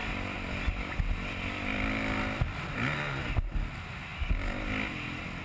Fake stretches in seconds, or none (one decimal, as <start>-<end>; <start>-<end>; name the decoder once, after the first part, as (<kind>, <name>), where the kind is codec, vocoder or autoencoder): none